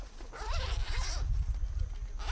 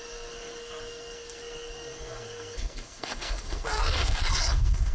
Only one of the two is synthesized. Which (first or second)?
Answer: second